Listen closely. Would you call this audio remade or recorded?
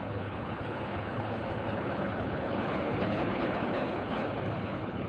remade